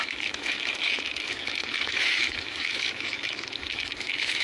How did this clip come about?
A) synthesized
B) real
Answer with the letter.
A